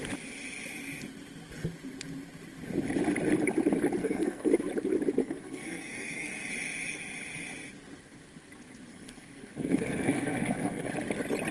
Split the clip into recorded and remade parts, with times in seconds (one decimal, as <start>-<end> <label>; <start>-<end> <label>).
0.0-4.0 recorded; 4.0-4.7 remade; 4.7-5.2 recorded; 5.2-6.5 remade; 6.5-8.9 recorded; 8.9-10.9 remade; 10.9-11.5 recorded